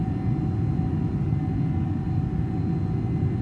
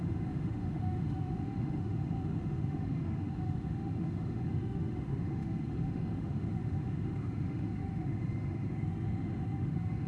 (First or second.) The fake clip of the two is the second